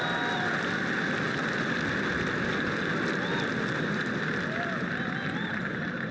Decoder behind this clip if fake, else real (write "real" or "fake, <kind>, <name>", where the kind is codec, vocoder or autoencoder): real